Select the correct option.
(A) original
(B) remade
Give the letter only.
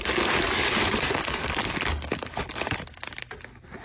A